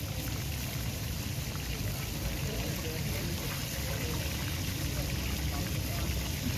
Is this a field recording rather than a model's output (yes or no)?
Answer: yes